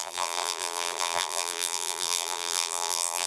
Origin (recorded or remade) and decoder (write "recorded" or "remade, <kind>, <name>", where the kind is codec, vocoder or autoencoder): remade, vocoder, BigVGAN v2